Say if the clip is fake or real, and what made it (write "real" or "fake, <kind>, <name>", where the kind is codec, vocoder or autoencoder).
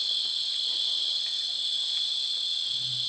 real